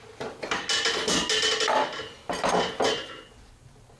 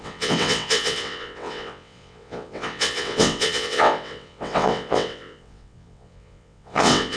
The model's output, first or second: second